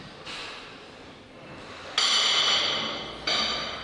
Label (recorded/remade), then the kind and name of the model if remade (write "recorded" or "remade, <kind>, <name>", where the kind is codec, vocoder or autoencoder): recorded